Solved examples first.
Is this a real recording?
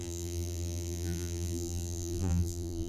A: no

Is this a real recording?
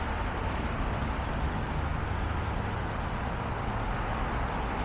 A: yes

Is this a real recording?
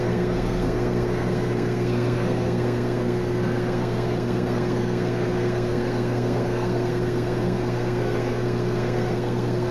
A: no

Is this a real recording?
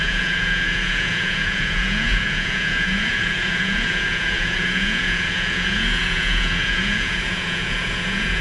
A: no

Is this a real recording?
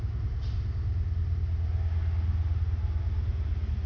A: yes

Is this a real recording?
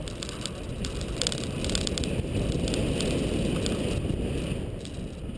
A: yes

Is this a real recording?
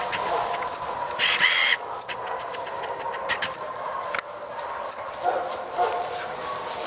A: yes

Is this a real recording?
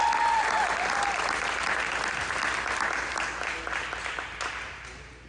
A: yes